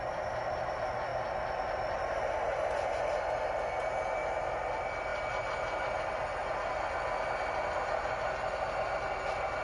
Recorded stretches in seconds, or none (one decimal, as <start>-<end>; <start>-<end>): 0.0-9.6